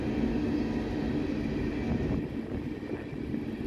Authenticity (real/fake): real